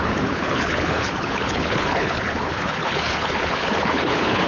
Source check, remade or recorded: remade